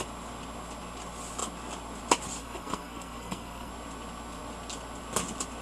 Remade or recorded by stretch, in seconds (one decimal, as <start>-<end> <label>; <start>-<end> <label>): 0.0-2.4 recorded; 2.4-3.7 remade; 3.7-5.6 recorded